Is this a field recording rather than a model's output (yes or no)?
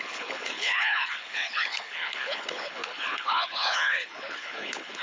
no